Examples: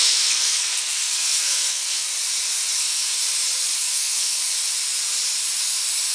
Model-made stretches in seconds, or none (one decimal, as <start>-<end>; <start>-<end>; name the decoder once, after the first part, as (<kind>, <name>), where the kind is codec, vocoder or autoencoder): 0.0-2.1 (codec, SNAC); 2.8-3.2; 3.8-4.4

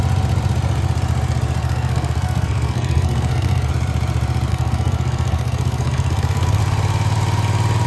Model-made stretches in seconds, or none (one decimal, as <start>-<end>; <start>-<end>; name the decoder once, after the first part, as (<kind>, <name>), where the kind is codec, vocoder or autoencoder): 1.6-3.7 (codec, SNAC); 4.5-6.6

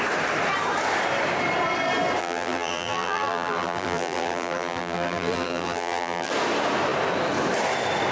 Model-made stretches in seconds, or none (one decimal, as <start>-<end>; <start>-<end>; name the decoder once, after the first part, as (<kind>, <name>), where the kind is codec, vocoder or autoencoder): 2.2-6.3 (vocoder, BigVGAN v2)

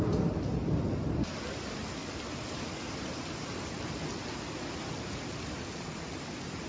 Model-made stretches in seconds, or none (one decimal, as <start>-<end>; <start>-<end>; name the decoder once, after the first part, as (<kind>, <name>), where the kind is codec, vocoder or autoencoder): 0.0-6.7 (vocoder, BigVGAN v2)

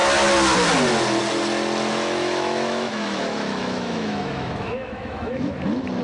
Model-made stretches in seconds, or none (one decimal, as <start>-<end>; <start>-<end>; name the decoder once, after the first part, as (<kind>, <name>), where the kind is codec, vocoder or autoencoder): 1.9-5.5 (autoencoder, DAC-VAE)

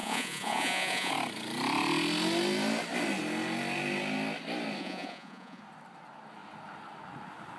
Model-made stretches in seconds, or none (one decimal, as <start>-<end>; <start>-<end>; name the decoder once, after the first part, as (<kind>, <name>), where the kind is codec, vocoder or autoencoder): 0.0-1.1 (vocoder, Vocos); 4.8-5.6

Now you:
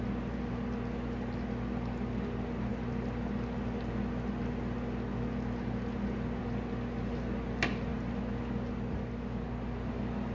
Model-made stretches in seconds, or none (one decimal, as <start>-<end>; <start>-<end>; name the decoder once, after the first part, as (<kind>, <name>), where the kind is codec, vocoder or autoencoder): none

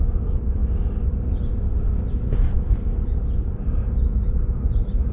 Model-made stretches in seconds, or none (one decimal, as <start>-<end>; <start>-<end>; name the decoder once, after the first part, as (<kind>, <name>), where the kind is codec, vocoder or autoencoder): 0.0-0.6 (vocoder, BigVGAN v2); 3.7-5.1